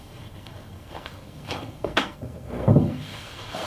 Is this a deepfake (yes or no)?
yes